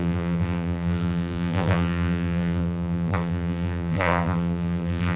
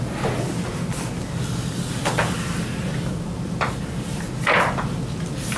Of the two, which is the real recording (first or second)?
second